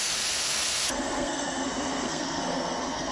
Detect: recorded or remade remade